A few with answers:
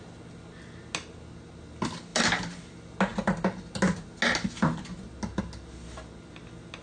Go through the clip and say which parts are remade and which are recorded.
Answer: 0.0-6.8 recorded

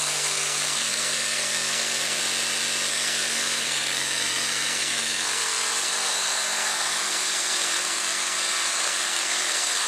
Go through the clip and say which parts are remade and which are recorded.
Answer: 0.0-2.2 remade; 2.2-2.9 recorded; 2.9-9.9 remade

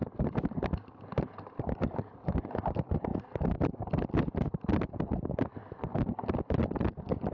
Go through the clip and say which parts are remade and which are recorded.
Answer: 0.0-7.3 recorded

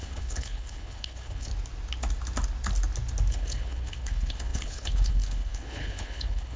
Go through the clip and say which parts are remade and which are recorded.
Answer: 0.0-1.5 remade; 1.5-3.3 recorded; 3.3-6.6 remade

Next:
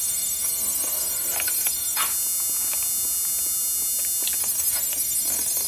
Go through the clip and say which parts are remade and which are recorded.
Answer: 0.0-2.1 remade; 2.1-4.4 recorded; 4.4-5.7 remade

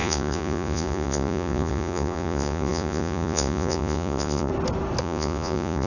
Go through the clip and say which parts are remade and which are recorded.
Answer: 0.0-4.5 remade; 4.5-5.0 recorded; 5.0-5.9 remade

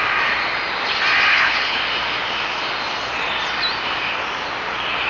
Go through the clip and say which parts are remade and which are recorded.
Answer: 0.0-1.3 recorded; 1.3-1.8 remade; 1.8-5.1 recorded